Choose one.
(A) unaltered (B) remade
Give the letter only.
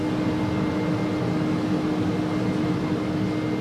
A